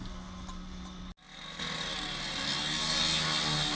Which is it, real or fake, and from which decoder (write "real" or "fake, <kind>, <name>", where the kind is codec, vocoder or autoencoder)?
real